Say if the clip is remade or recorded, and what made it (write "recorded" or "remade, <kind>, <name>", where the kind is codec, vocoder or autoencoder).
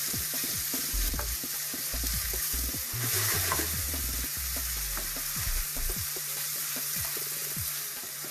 remade, vocoder, BigVGAN v2